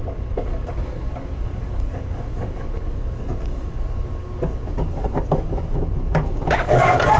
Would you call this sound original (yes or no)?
no